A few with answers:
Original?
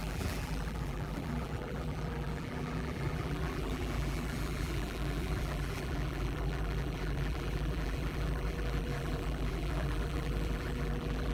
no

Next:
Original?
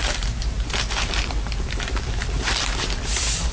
no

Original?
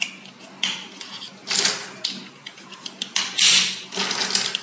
yes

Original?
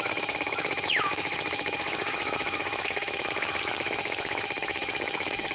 no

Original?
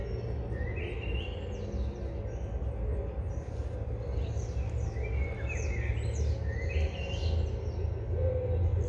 yes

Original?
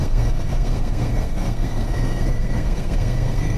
no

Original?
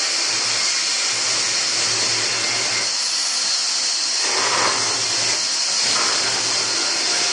yes